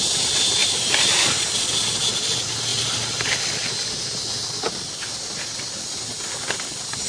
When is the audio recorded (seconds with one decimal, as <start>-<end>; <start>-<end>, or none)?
0.0-0.6; 2.1-2.7; 3.7-7.1